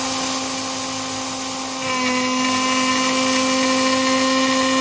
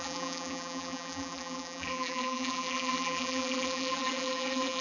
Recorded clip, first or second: first